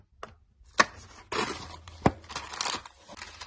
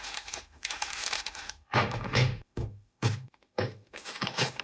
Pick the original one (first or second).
first